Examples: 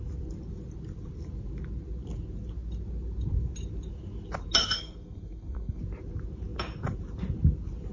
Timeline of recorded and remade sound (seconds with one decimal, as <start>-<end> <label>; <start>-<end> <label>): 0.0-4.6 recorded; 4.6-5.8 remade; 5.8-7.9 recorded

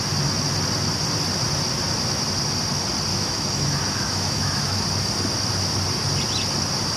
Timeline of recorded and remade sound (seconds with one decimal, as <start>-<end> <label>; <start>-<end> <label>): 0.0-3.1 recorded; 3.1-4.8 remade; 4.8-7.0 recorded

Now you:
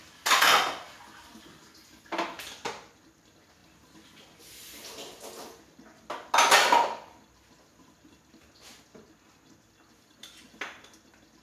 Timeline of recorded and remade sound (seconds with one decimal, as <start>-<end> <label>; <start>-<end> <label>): 0.0-11.4 recorded

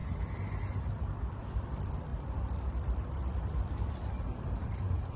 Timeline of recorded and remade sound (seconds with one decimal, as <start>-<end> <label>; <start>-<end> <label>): 0.0-1.0 recorded; 1.0-5.2 remade

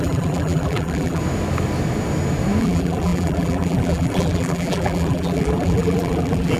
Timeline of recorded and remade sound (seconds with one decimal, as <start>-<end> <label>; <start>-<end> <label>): 0.0-1.2 remade; 1.2-2.6 recorded; 2.6-6.6 remade

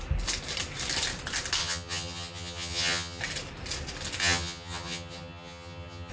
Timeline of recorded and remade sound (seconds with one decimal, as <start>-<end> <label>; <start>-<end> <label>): 0.0-1.6 recorded; 1.6-3.2 remade; 3.2-4.2 recorded; 4.2-6.1 remade

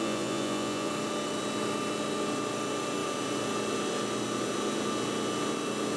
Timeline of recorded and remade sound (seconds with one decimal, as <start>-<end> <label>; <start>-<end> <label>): 0.0-0.9 remade; 0.9-6.0 recorded